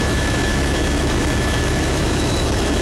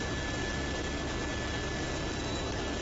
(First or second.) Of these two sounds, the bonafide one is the second